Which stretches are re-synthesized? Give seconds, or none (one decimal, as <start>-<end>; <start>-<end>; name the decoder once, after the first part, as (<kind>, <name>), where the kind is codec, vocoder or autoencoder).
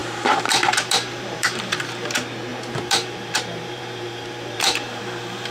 0.0-1.8 (vocoder, BigVGAN v2); 2.5-5.0